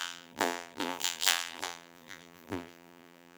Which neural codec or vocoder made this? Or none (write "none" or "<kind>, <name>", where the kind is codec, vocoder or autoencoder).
vocoder, BigVGAN v2